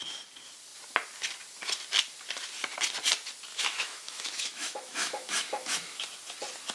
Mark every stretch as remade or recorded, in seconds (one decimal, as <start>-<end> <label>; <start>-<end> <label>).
0.0-3.5 recorded; 3.5-6.0 remade; 6.0-6.7 recorded

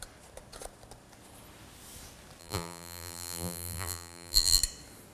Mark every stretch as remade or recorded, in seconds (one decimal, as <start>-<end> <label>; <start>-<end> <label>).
0.0-2.4 recorded; 2.4-4.6 remade; 4.6-5.1 recorded

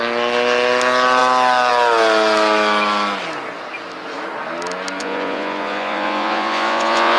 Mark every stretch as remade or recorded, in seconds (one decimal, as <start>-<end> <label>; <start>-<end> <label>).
0.0-5.0 recorded; 5.0-7.2 remade

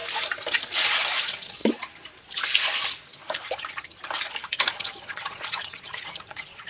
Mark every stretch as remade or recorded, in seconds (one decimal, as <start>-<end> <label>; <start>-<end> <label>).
0.0-1.2 recorded; 1.2-1.6 remade; 1.6-4.7 recorded; 4.7-6.7 remade

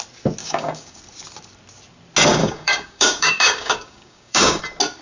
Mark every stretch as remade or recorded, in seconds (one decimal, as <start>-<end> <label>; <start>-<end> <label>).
0.0-0.4 recorded; 0.4-1.0 remade; 1.0-2.4 recorded; 2.4-4.6 remade; 4.6-5.0 recorded

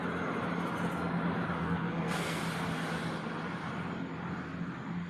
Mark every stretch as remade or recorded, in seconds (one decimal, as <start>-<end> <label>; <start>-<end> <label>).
0.0-1.6 recorded; 1.6-2.4 remade; 2.4-5.1 recorded

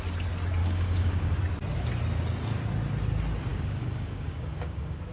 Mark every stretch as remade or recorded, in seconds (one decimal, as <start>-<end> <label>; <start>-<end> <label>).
0.0-0.6 recorded; 0.6-1.4 remade; 1.4-3.5 recorded; 3.5-5.1 remade

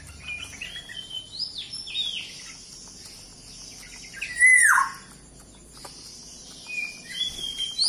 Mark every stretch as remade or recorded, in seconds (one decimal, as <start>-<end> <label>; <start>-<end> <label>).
0.0-7.9 recorded